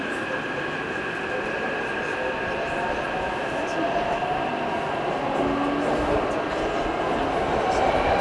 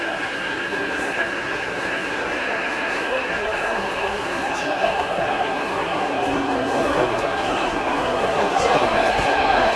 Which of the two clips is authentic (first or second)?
first